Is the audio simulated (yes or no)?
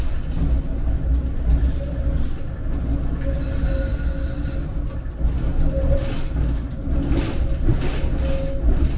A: no